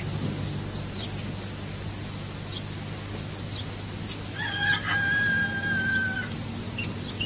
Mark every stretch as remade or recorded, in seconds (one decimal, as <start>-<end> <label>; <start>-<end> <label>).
0.0-5.9 recorded; 5.9-7.3 remade